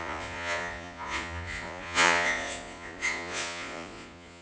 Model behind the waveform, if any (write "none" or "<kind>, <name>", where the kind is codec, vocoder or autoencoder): vocoder, Vocos